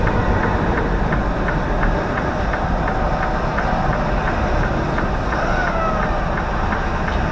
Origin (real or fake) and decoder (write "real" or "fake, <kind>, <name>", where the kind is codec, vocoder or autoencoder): real